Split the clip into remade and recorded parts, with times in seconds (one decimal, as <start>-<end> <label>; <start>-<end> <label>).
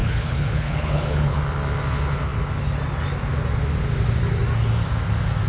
0.0-1.4 remade; 1.4-5.5 recorded